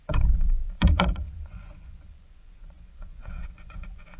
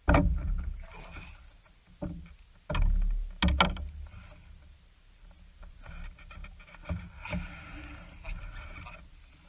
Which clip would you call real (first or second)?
second